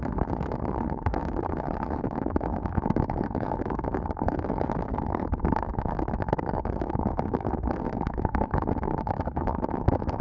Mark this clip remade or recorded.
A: remade